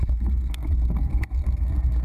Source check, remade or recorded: remade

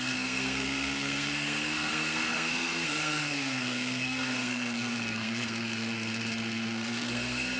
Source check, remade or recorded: remade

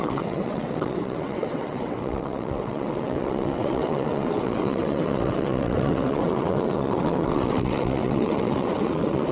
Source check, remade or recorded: remade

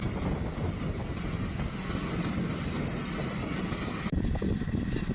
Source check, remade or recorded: recorded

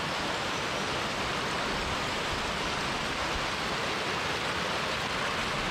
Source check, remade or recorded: recorded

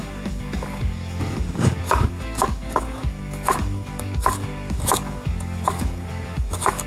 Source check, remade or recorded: remade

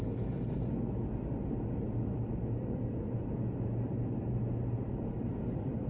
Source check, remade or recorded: recorded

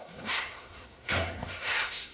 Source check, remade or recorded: remade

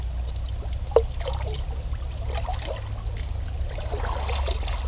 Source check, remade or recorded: recorded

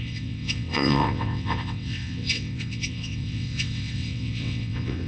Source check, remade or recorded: remade